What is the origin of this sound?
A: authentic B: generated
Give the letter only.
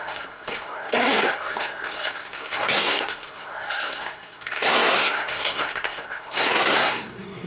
B